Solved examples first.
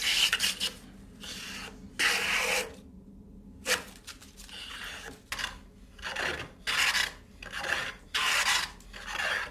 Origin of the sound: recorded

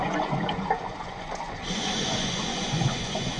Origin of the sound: remade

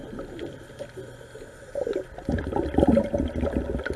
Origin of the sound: recorded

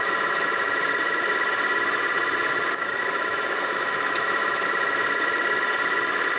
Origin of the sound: remade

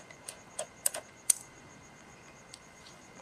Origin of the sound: remade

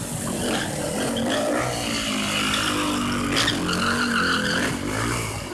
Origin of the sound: recorded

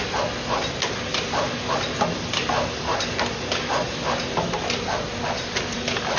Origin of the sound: recorded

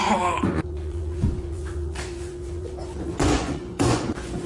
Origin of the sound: remade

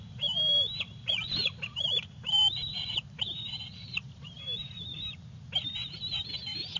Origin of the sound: recorded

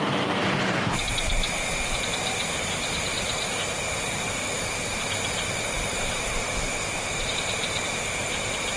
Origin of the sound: remade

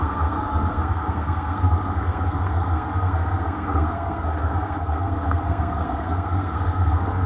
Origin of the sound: remade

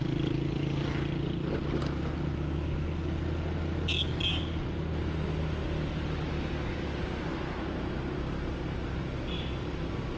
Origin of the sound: recorded